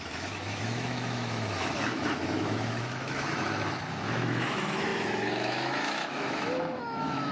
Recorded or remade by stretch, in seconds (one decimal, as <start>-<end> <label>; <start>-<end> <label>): 0.0-7.3 remade

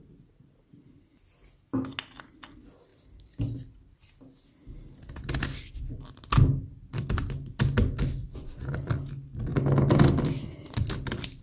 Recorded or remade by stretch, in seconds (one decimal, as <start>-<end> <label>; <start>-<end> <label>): 0.0-8.2 recorded; 8.2-8.7 remade; 8.7-11.4 recorded

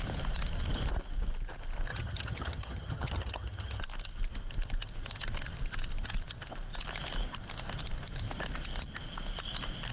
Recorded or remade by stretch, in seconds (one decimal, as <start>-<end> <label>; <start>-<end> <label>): 0.0-1.9 recorded; 1.9-3.8 remade; 3.8-9.9 recorded

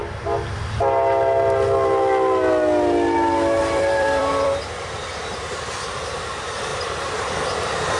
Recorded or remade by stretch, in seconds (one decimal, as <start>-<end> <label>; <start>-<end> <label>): 0.0-3.6 recorded; 3.6-6.7 remade; 6.7-7.2 recorded; 7.2-8.0 remade